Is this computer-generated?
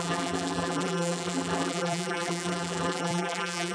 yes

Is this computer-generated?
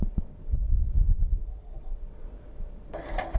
yes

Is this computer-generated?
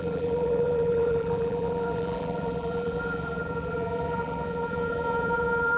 yes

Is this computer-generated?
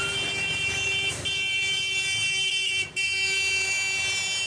yes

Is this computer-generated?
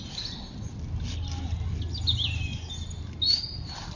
no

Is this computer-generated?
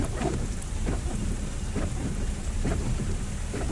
yes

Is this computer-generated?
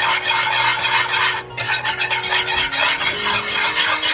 no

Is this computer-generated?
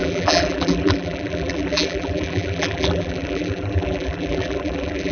yes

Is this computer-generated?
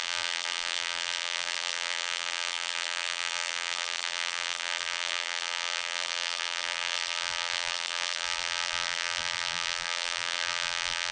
yes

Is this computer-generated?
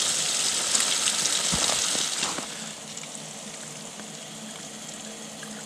no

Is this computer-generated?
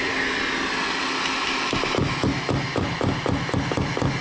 no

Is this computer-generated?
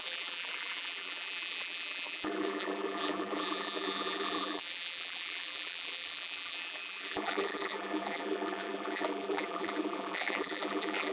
yes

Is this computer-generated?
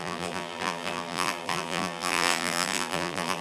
yes